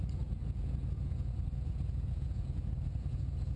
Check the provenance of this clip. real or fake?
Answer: fake